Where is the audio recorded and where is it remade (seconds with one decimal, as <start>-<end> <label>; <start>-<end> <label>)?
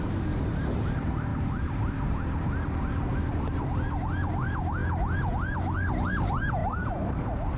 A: 0.0-4.8 remade; 4.8-6.1 recorded; 6.1-7.6 remade